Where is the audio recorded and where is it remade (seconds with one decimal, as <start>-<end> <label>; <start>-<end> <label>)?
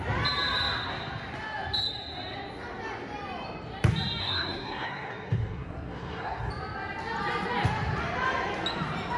0.0-4.2 recorded; 4.2-6.5 remade; 6.5-9.2 recorded